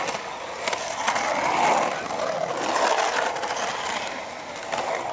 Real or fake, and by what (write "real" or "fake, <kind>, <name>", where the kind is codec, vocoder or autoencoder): real